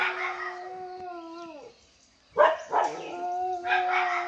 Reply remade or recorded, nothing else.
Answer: recorded